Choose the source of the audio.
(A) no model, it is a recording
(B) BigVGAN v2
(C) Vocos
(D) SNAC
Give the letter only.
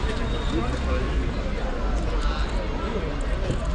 A